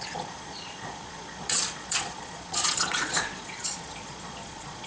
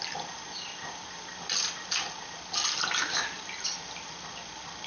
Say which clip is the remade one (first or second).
first